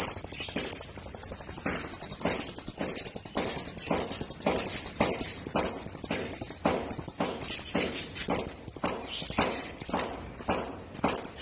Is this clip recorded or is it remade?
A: recorded